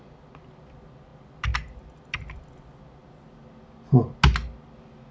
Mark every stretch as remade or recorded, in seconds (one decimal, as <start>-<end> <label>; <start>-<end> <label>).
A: 0.0-5.1 recorded